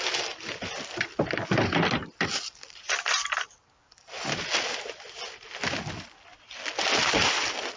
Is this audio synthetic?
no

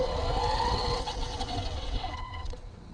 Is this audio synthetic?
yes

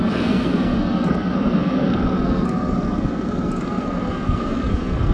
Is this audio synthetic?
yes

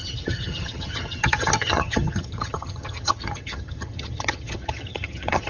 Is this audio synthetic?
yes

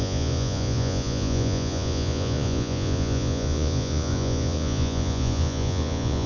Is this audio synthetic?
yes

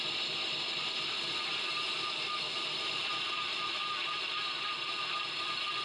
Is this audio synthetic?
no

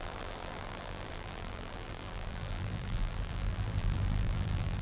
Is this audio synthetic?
yes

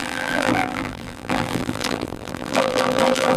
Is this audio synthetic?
yes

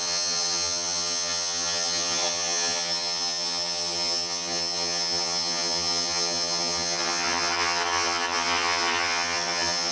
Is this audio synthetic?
yes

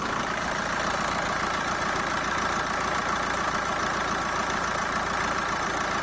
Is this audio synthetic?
no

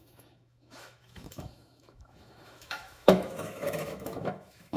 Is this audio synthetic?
yes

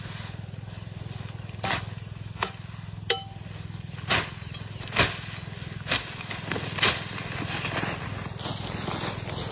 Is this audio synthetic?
no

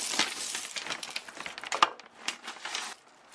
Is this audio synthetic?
no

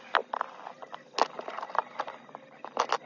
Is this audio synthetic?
no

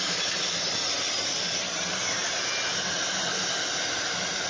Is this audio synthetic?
no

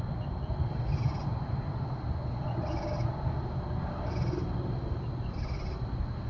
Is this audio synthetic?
no